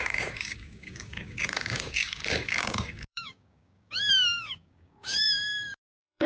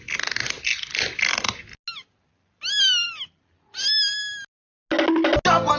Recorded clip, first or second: second